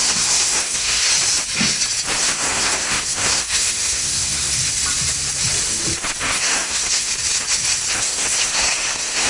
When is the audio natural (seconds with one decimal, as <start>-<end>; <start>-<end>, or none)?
1.1-2.2; 4.6-6.2; 7.1-7.9